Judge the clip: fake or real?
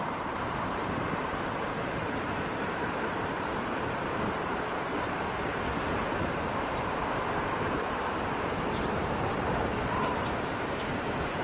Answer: fake